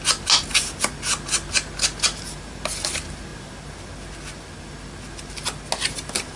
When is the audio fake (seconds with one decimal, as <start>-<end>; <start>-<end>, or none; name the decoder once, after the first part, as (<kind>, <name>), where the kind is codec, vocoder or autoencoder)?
none